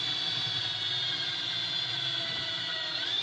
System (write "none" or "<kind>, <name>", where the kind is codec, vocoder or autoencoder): none